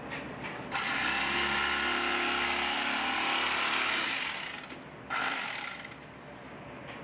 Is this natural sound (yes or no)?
yes